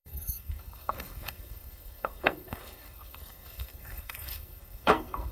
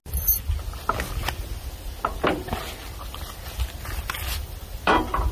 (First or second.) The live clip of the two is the second